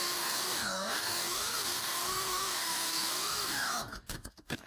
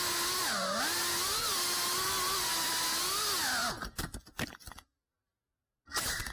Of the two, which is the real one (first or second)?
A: second